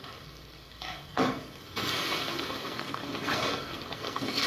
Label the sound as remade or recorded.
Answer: remade